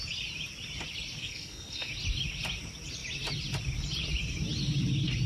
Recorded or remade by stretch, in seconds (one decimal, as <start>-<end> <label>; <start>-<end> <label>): 0.0-1.2 recorded; 1.2-1.9 remade; 1.9-5.3 recorded